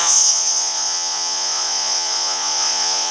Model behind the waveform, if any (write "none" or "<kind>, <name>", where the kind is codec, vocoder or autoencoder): vocoder, Vocos